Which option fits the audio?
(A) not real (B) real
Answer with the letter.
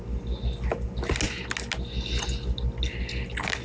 B